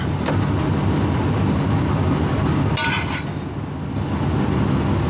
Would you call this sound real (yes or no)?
yes